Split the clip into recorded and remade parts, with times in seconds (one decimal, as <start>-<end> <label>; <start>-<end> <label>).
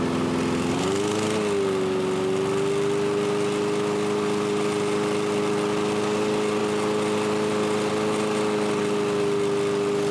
0.0-10.1 recorded